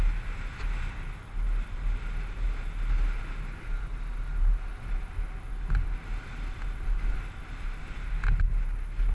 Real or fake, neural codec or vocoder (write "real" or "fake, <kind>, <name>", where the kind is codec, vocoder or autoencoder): real